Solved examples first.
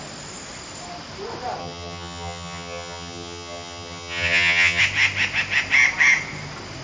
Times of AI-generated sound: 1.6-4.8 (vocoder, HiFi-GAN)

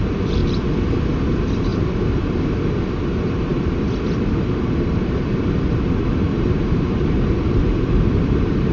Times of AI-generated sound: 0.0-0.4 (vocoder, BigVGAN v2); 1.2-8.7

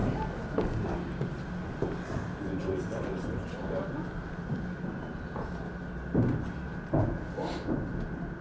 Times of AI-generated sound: none

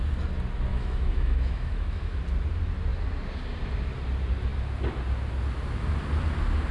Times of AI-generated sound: 0.7-2.2 (autoencoder, DAC-VAE)

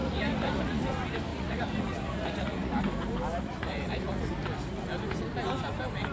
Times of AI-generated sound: 0.0-0.8 (vocoder, Vocos); 1.3-2.8; 3.3-4.3

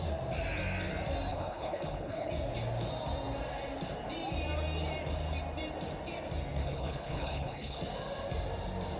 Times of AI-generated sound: 1.3-2.3 (codec, HILCodec); 6.6-7.8